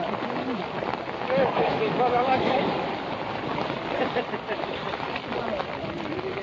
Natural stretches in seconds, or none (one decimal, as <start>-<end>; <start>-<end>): 0.0-1.4; 2.6-6.4